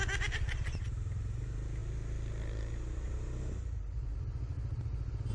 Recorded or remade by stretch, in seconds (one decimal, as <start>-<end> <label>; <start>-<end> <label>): 0.0-5.3 recorded